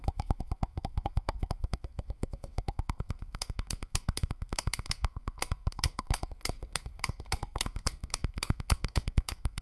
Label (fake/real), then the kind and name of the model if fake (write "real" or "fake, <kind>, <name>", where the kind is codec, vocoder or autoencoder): fake, codec, SNAC